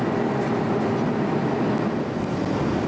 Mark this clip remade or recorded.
recorded